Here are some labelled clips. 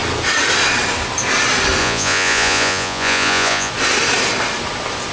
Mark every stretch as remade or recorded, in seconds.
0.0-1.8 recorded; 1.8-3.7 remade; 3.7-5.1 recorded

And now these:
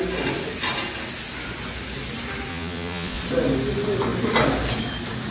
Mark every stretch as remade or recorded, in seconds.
0.0-2.5 recorded; 2.5-3.2 remade; 3.2-5.3 recorded

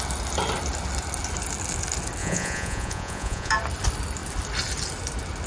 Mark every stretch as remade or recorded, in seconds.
0.0-2.2 recorded; 2.2-3.5 remade; 3.5-5.5 recorded

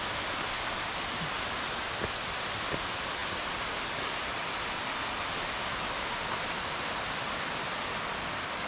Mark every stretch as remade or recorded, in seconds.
0.0-8.7 recorded

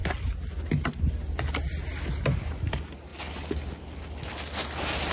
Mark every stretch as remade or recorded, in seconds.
0.0-5.1 recorded

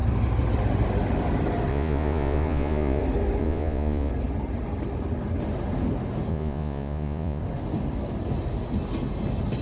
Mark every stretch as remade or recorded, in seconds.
0.0-1.7 recorded; 1.7-3.0 remade; 3.0-3.4 recorded; 3.4-4.1 remade; 4.1-6.3 recorded; 6.3-7.4 remade; 7.4-9.6 recorded